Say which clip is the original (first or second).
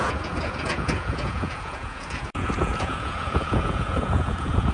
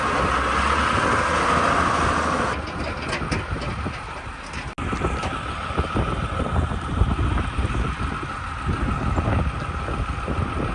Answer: second